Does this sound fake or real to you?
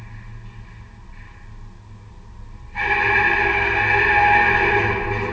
real